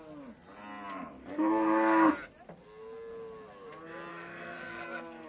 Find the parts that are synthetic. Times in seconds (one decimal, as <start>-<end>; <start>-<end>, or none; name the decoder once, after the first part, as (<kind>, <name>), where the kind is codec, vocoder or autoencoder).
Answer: 1.2-2.1 (codec, SNAC); 4.1-5.3